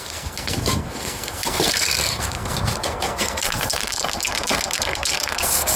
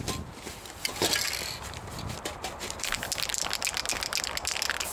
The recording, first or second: second